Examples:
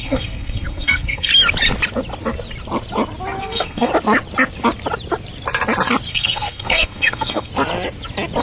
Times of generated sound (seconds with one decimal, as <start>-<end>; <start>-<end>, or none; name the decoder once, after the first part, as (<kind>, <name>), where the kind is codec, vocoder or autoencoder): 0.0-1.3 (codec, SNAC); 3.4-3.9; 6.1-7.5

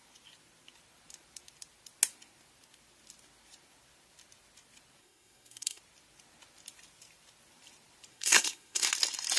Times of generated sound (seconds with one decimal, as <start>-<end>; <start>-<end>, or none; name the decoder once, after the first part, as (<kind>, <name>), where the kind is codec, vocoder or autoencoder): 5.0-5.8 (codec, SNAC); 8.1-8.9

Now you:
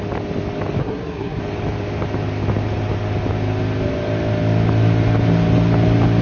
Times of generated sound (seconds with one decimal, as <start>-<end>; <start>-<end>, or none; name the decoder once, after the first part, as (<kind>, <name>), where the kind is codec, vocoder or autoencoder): 0.8-1.4 (codec, SNAC)

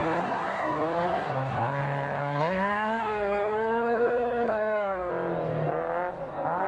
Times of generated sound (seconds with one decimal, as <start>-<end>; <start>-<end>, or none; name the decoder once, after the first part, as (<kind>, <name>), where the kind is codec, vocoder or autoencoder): 0.0-1.8 (codec, SNAC); 2.2-5.1

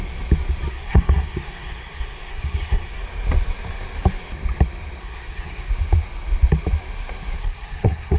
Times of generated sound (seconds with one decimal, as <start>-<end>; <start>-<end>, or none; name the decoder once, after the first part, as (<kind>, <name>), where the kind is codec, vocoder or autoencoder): 0.7-3.0 (codec, SNAC); 5.0-5.7; 7.4-8.2